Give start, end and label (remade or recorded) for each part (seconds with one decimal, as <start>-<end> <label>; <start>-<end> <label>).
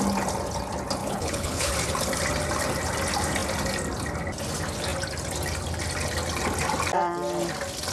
0.0-1.0 recorded; 1.0-1.7 remade; 1.7-7.9 recorded